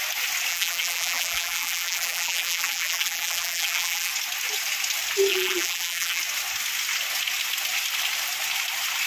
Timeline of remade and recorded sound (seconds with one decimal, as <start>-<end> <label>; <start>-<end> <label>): 0.0-0.5 recorded; 0.5-4.1 remade; 4.1-5.3 recorded; 5.3-6.2 remade; 6.2-9.1 recorded